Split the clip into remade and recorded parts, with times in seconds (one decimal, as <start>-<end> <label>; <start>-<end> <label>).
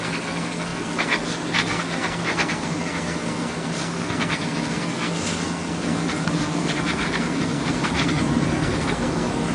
0.0-9.5 remade